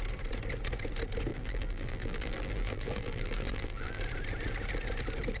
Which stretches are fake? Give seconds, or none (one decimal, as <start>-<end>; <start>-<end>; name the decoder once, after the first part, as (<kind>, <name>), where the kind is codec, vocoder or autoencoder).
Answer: 1.3-4.0 (vocoder, BigVGAN v2)